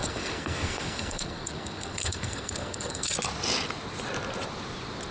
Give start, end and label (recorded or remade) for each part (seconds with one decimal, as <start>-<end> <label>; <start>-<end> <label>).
0.0-3.1 remade; 3.1-5.1 recorded